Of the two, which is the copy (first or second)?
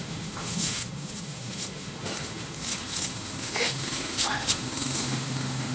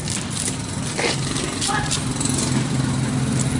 first